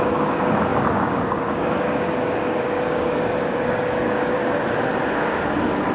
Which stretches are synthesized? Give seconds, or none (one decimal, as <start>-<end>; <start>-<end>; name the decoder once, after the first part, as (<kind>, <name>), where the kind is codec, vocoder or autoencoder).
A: 0.0-4.4 (codec, DAC); 5.1-5.9